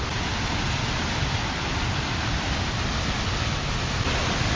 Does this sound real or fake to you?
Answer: real